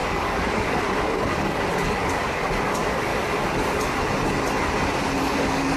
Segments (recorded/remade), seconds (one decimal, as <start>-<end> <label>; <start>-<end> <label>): 0.0-3.1 remade; 3.1-5.2 recorded; 5.2-5.8 remade